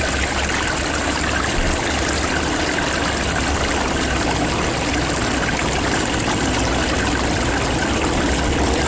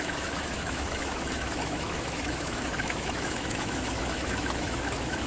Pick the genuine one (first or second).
first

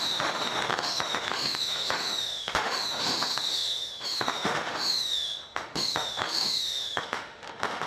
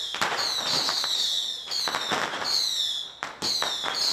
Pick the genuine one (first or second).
second